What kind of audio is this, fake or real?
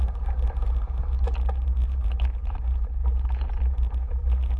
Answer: real